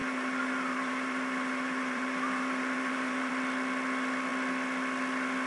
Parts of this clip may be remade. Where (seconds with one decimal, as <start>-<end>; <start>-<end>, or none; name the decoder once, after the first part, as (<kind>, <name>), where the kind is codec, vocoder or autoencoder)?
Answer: 0.0-3.3 (vocoder, BigVGAN v2)